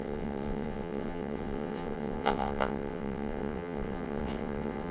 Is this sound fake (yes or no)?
yes